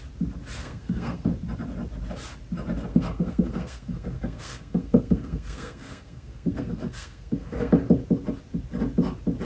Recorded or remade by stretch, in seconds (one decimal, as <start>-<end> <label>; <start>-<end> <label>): 0.0-0.6 recorded; 0.6-1.3 remade; 1.3-2.9 recorded; 2.9-7.7 remade; 7.7-9.4 recorded